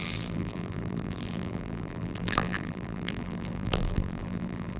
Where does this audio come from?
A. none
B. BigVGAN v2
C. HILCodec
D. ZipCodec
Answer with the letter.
B